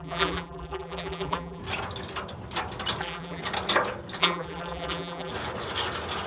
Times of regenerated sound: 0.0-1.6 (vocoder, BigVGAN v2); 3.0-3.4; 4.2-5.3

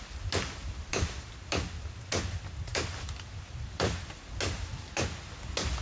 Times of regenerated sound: 0.6-1.5 (vocoder, BigVGAN v2); 2.7-4.2

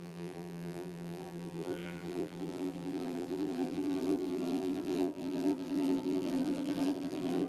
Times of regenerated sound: 0.0-7.5 (vocoder, BigVGAN v2)

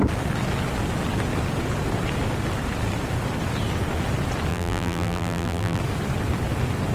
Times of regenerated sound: 4.5-5.8 (vocoder, BigVGAN v2)

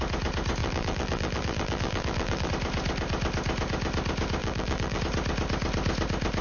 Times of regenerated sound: 0.6-2.5 (vocoder, BigVGAN v2); 4.4-5.0